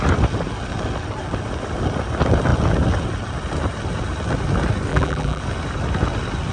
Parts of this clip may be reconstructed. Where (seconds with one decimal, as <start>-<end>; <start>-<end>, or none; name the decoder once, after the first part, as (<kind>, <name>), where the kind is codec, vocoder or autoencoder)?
4.9-5.4 (vocoder, BigVGAN v2)